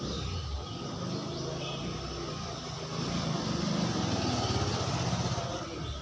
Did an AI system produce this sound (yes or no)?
no